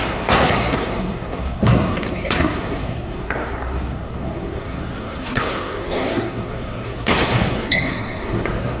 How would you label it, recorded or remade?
remade